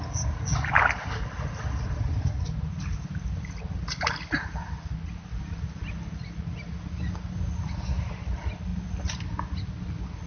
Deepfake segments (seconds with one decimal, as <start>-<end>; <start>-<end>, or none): none